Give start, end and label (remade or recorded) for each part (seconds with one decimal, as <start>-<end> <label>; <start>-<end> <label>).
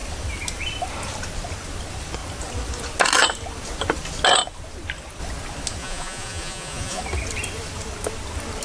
0.0-5.8 recorded; 5.8-7.0 remade; 7.0-8.6 recorded